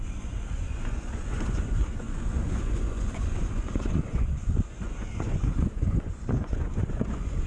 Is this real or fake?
fake